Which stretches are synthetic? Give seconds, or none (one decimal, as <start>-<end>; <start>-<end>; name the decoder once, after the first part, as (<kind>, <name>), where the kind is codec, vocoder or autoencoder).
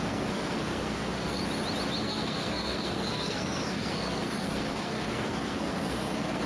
0.0-1.4 (codec, SNAC); 2.0-6.5